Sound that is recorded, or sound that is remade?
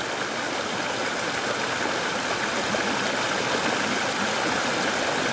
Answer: recorded